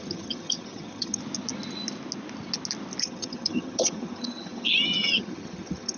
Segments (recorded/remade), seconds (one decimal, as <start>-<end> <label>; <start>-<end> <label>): 0.0-1.2 remade; 1.2-3.0 recorded; 3.0-6.0 remade